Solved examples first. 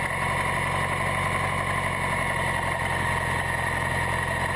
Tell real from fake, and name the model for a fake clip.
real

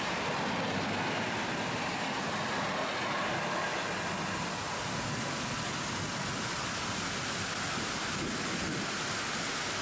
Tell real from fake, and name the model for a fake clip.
real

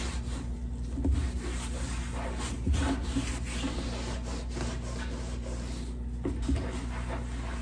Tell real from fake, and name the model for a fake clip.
real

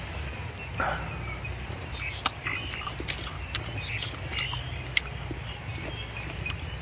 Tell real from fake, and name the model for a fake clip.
fake, vocoder, BigVGAN v2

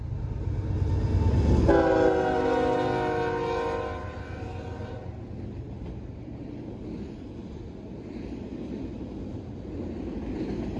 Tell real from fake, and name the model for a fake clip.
real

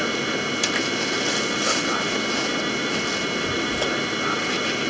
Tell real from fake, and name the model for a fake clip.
real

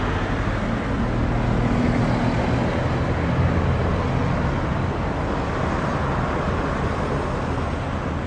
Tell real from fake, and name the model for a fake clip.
real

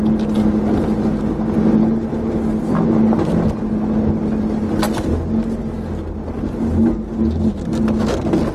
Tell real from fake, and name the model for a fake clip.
real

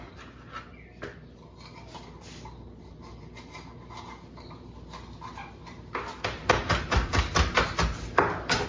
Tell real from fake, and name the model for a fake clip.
real